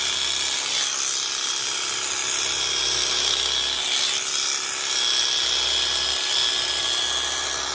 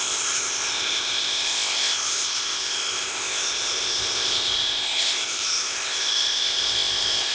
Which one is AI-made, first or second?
second